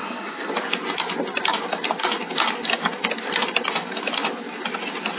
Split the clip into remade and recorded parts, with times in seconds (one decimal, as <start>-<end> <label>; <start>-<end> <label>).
0.0-0.5 remade; 0.5-5.2 recorded